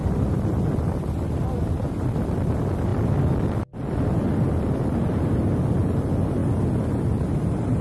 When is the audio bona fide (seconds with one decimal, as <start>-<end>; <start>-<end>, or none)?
0.0-7.8